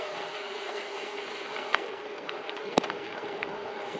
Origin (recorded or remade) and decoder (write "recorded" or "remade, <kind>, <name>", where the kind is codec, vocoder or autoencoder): remade, codec, SNAC